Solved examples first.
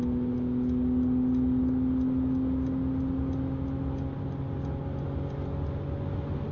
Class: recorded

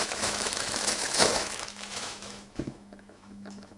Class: remade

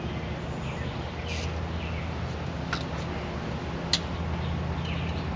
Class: recorded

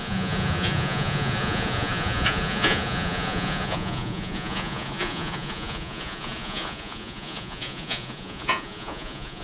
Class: remade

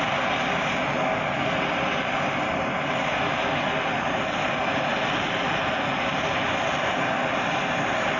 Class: recorded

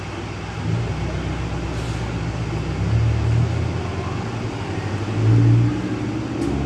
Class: recorded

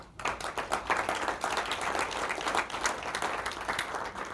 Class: recorded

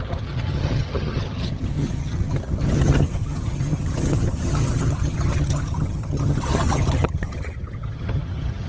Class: remade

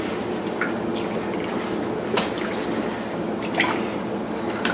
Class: recorded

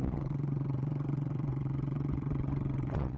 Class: remade